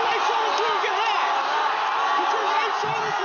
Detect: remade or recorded recorded